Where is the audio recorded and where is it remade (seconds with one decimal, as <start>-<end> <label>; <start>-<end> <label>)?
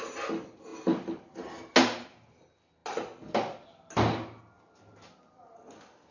0.0-6.1 recorded